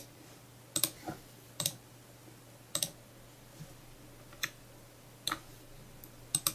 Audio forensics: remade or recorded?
recorded